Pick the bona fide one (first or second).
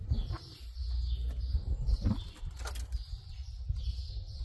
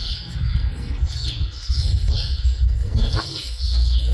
first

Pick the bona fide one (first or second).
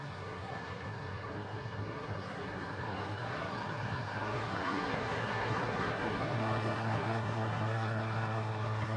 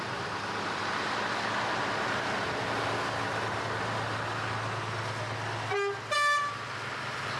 second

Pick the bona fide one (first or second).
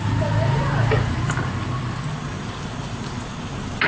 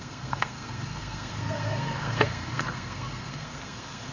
first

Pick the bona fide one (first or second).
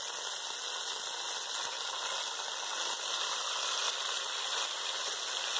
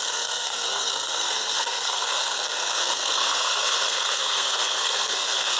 first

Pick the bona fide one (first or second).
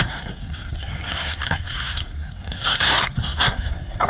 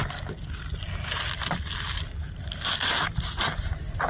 second